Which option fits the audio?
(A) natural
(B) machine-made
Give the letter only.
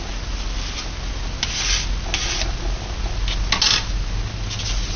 A